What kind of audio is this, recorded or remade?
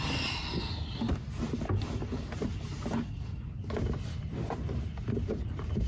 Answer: recorded